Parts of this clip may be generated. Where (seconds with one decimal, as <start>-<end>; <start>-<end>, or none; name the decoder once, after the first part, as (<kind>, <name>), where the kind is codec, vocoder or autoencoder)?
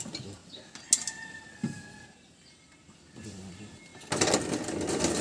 none